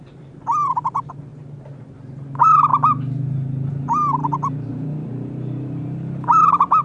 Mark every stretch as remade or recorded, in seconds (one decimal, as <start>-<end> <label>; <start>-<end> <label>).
0.0-2.7 remade; 2.7-3.7 recorded; 3.7-4.2 remade; 4.2-4.7 recorded; 4.7-6.8 remade